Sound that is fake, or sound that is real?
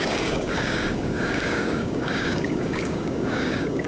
fake